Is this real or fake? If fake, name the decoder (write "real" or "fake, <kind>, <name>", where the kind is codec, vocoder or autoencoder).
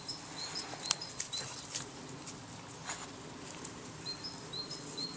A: real